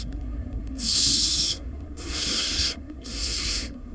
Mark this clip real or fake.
fake